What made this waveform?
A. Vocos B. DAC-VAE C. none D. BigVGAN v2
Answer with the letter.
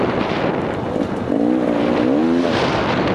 C